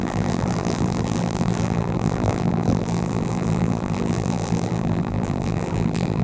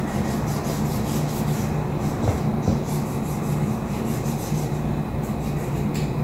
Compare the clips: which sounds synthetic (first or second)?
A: first